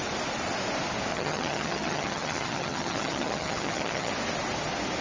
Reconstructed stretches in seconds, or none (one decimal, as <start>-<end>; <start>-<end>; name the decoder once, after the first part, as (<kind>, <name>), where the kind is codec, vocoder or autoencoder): 1.1-4.1 (vocoder, HiFi-GAN)